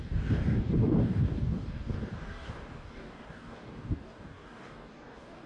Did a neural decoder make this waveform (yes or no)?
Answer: yes